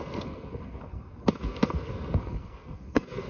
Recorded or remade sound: remade